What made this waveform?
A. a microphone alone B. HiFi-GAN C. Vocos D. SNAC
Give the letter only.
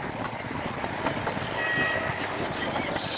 A